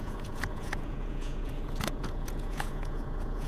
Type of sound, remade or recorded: remade